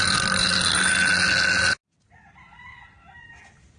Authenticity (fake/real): real